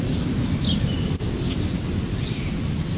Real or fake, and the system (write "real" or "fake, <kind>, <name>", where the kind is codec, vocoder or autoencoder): real